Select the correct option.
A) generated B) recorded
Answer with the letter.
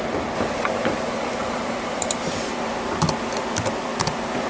B